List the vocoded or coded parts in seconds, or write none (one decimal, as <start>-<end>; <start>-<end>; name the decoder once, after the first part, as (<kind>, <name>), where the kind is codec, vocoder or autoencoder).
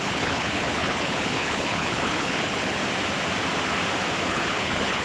0.0-2.8 (codec, HILCodec); 4.3-5.0